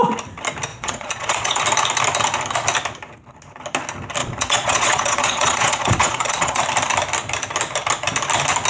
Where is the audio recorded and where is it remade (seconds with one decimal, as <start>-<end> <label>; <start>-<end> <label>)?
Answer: 0.0-0.7 recorded; 0.7-1.6 remade; 1.6-4.2 recorded; 4.2-6.6 remade; 6.6-8.7 recorded